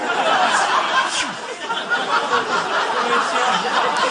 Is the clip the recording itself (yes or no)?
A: yes